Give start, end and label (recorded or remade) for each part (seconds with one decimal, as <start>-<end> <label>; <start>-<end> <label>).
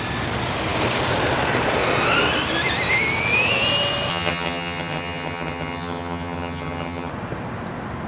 0.0-4.1 recorded; 4.1-7.1 remade; 7.1-8.1 recorded